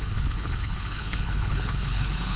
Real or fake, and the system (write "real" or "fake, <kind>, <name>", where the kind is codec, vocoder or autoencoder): fake, codec, HILCodec